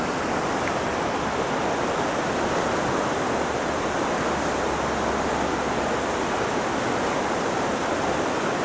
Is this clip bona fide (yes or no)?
yes